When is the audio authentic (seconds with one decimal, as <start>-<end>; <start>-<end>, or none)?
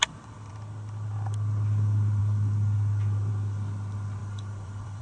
0.5-4.2